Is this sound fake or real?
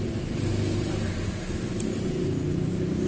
real